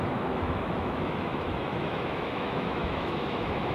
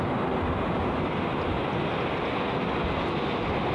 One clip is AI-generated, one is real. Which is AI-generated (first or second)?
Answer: first